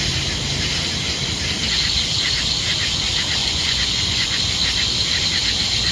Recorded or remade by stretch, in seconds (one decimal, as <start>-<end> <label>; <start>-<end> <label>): 0.0-3.4 recorded; 3.4-4.4 remade; 4.4-5.9 recorded

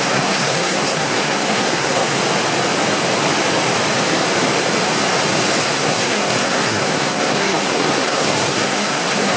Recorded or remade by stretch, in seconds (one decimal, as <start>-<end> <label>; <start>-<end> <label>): 0.0-2.2 remade; 2.2-5.6 recorded; 5.6-9.4 remade

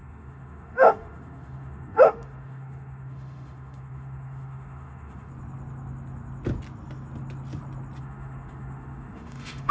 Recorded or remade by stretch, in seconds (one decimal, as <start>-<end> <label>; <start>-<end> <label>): 0.0-5.3 remade; 5.3-8.0 recorded; 8.0-9.7 remade

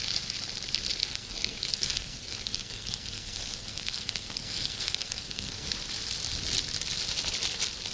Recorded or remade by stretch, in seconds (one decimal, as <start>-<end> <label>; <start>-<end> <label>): 0.0-1.0 recorded; 1.0-5.7 remade; 5.7-7.9 recorded

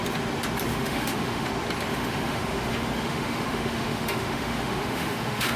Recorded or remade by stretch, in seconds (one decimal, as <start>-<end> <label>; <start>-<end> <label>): 0.0-0.7 recorded; 0.7-1.5 remade; 1.5-1.9 recorded; 1.9-5.6 remade

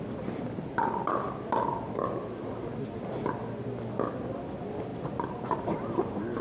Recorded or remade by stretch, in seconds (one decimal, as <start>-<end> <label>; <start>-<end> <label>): 0.0-6.4 recorded

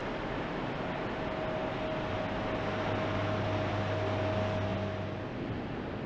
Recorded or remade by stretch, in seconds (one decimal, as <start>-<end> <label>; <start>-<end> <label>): 0.0-6.1 recorded